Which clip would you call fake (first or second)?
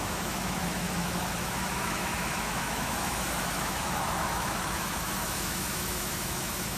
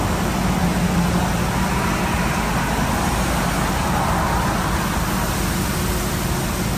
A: first